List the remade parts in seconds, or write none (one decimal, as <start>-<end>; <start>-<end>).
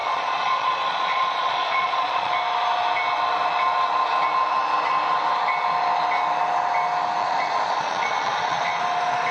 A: 0.0-2.3; 7.2-8.8